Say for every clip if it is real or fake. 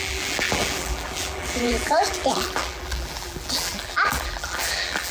fake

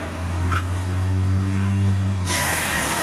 fake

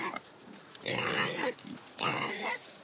fake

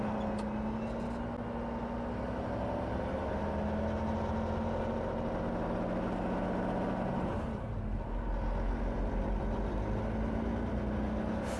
real